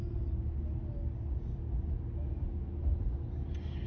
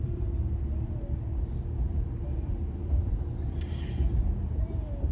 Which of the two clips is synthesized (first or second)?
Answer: second